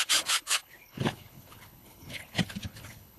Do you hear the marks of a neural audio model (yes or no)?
yes